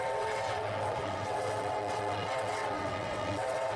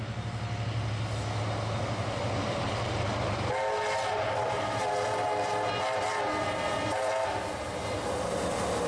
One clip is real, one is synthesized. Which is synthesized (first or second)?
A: first